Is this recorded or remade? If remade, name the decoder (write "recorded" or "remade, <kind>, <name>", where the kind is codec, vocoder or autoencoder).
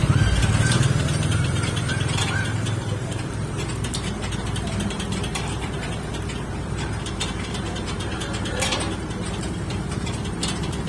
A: remade, vocoder, BigVGAN v2